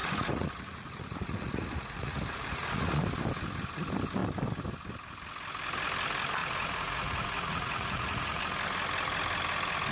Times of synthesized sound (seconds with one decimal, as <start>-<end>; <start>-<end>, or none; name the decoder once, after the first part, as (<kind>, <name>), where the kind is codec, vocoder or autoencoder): 0.0-3.0 (vocoder, Vocos); 6.4-8.4